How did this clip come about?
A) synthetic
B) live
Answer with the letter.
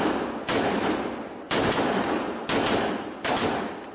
B